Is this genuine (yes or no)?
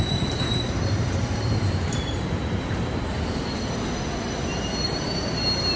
no